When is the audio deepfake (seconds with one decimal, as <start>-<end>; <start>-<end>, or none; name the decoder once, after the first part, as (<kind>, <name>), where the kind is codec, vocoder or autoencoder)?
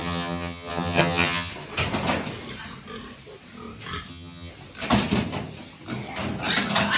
0.0-1.5 (vocoder, HiFi-GAN); 4.1-4.5